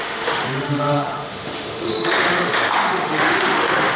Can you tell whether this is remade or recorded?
remade